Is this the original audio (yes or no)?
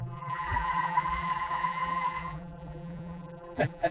no